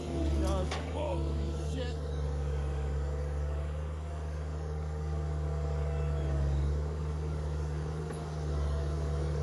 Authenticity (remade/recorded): remade